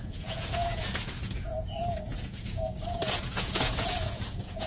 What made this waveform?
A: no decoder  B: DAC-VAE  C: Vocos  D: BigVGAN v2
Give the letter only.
C